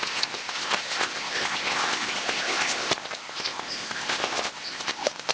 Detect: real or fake fake